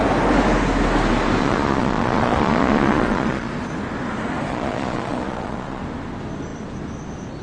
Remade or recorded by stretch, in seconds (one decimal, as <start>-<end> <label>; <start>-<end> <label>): 0.0-1.4 recorded; 1.4-3.5 remade; 3.5-4.5 recorded; 4.5-5.8 remade; 5.8-7.4 recorded